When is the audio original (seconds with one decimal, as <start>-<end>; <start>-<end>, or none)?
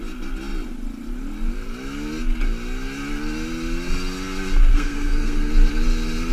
0.0-4.7; 5.5-6.3